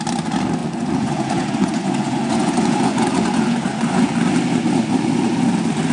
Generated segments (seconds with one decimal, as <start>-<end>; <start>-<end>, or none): 0.6-4.1